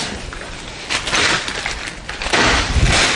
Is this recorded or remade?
recorded